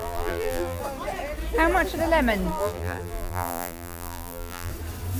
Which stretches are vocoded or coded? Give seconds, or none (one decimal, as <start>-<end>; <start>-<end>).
0.0-0.8; 2.5-4.7

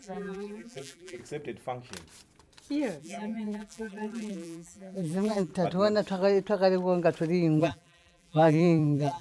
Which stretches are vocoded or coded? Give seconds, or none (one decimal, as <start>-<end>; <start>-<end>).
0.0-1.2; 3.0-5.5; 7.6-9.2

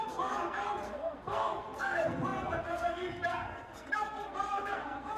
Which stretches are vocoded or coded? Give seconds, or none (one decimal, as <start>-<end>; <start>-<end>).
0.0-5.2